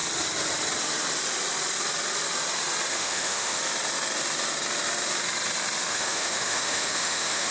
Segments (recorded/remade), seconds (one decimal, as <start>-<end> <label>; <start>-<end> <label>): 0.0-2.9 recorded; 2.9-3.6 remade; 3.6-5.9 recorded; 5.9-7.5 remade